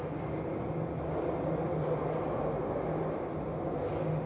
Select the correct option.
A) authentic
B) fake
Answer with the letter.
A